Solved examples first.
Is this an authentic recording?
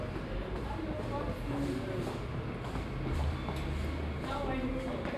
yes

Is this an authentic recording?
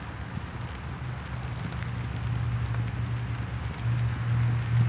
yes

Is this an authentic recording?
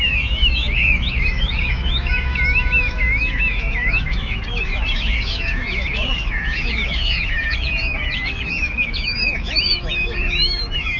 no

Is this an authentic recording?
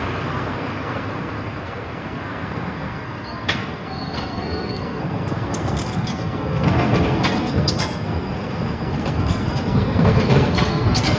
no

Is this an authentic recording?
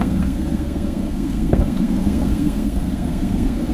no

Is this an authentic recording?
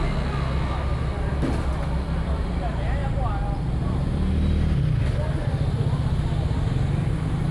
yes